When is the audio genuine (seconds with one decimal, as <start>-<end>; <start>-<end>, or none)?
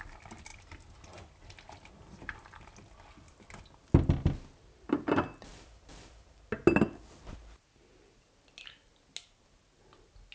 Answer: 0.0-10.3